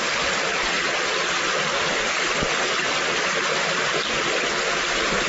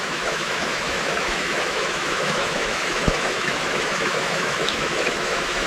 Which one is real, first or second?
first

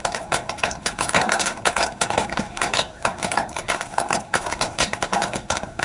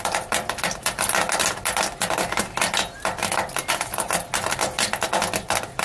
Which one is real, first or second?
second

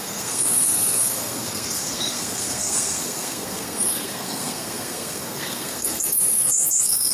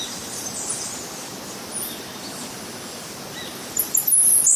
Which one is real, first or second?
second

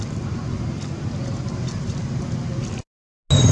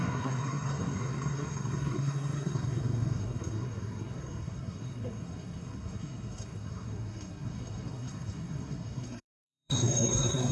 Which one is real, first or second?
first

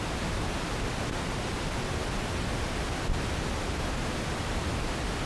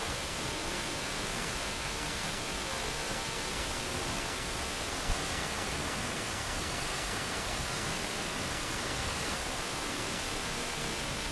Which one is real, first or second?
first